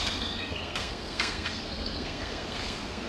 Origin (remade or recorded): remade